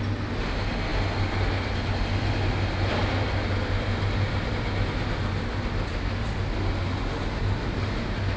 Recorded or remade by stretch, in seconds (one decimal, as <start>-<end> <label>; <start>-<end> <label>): 0.0-8.4 recorded